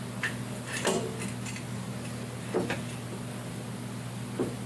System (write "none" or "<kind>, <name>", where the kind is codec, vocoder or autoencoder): none